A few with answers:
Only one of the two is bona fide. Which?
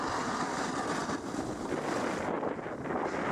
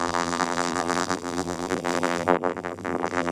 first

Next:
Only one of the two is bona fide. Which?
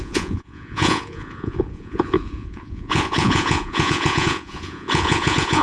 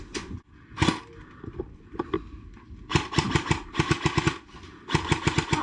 second